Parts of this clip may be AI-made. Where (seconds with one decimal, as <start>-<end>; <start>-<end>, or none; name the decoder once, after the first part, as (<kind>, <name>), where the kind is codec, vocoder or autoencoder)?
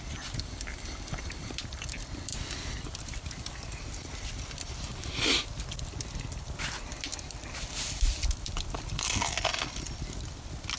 none